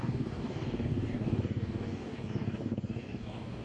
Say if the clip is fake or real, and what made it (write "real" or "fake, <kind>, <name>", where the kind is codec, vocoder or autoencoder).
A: fake, codec, DAC